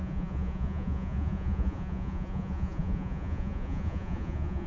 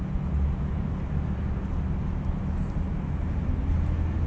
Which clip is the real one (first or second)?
second